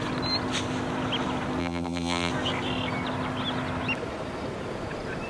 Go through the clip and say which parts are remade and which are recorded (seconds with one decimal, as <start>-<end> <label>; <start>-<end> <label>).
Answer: 0.0-1.6 recorded; 1.6-2.3 remade; 2.3-5.3 recorded